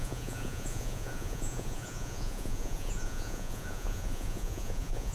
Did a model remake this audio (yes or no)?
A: yes